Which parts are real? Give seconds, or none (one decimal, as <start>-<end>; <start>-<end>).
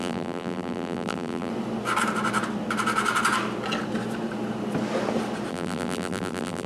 1.5-5.5